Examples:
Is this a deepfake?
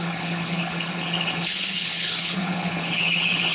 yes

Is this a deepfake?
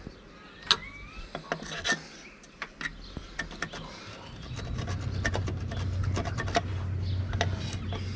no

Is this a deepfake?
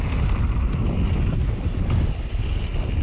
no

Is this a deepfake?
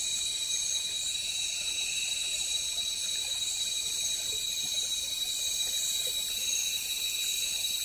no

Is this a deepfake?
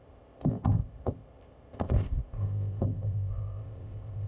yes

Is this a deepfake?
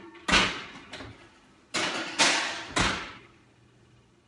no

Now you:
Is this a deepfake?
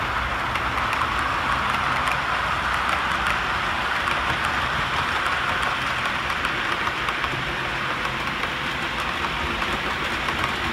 no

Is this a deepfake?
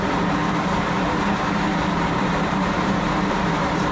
yes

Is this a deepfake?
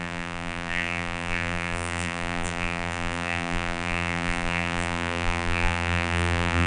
yes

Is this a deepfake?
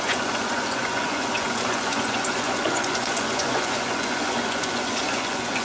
yes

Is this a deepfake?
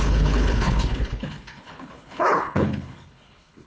yes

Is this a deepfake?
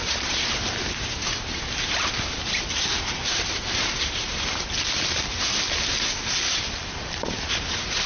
yes